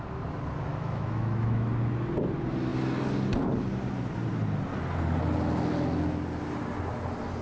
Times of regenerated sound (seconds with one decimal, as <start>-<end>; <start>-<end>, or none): 0.7-1.7